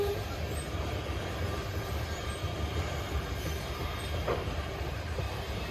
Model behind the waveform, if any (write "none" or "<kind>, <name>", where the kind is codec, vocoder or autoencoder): vocoder, BigVGAN v2